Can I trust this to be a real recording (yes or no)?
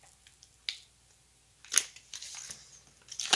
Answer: yes